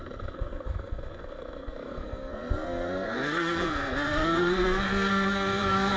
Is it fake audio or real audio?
fake